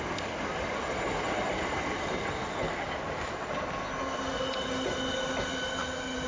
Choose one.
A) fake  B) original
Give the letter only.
B